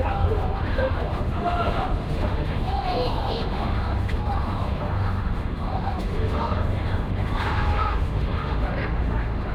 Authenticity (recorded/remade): remade